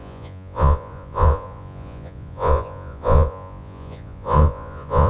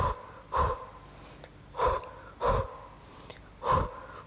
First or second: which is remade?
first